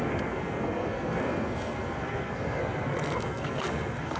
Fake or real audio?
fake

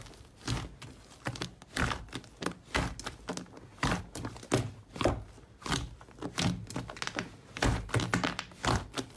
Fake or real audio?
real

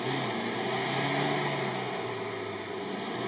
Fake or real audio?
real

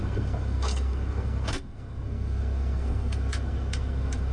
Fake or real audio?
fake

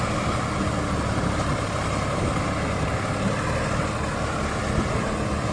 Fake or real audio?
real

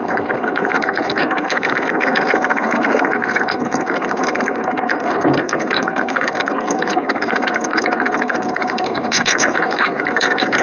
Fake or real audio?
fake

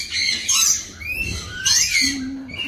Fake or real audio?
real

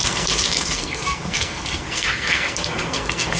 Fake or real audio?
fake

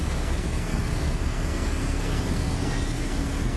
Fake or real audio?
fake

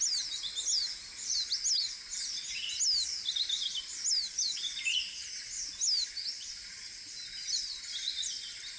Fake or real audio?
real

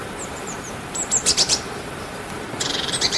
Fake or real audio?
fake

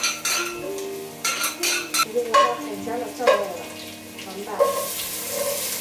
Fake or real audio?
real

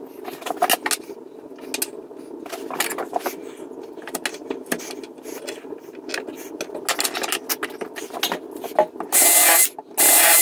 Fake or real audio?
real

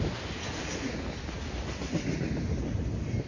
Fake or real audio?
real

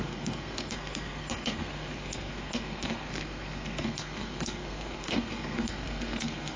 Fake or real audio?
fake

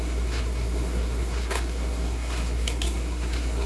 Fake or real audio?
fake